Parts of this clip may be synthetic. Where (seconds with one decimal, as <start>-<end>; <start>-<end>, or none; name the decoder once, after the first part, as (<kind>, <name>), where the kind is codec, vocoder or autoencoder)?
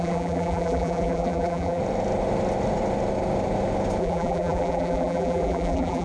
0.0-1.8 (vocoder, BigVGAN v2); 4.0-6.0